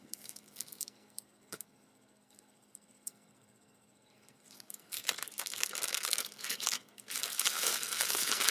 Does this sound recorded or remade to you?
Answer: remade